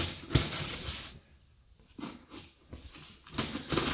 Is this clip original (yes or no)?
yes